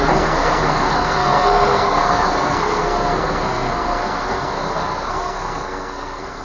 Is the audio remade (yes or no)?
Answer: yes